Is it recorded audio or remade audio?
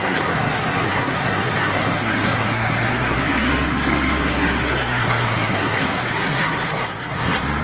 remade